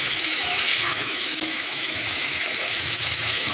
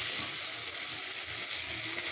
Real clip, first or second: second